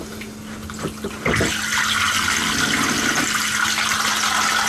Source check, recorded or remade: recorded